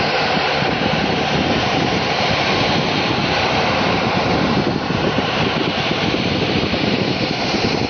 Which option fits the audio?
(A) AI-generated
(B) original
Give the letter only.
A